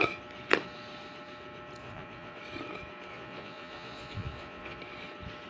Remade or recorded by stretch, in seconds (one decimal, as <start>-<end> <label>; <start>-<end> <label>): 0.0-1.8 recorded; 1.8-2.4 remade; 2.4-3.1 recorded; 3.1-4.8 remade; 4.8-5.5 recorded